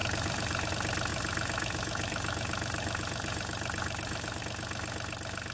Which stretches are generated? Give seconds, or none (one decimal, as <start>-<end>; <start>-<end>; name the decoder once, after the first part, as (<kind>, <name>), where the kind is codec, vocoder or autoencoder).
0.0-0.7 (vocoder, BigVGAN v2); 1.1-4.4